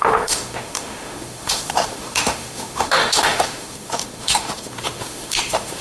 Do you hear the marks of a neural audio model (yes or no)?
yes